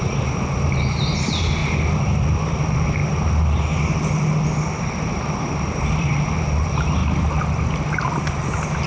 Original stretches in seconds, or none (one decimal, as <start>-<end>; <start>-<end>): 1.6-2.4; 3.0-4.9; 7.0-8.9